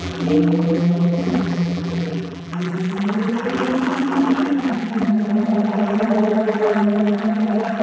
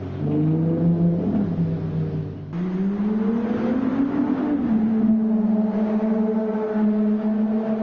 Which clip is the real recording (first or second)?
second